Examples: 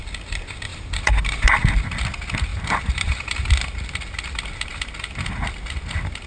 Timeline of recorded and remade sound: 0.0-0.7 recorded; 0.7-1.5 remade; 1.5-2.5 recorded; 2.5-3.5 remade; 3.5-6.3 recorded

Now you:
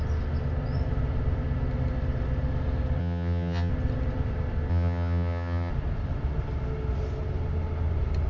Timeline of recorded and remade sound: 0.0-3.0 recorded; 3.0-3.7 remade; 3.7-4.7 recorded; 4.7-5.7 remade; 5.7-8.3 recorded

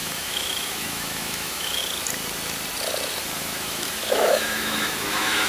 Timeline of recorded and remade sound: 0.0-1.8 remade; 1.8-3.4 recorded; 3.4-5.5 remade

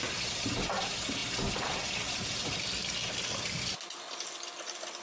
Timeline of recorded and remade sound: 0.0-5.0 recorded

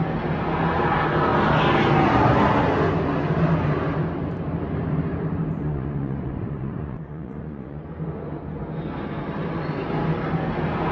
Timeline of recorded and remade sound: 0.0-5.6 recorded; 5.6-7.8 remade; 7.8-10.9 recorded

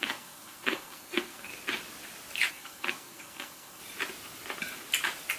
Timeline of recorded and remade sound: 0.0-1.5 remade; 1.5-2.5 recorded; 2.5-3.8 remade; 3.8-5.4 recorded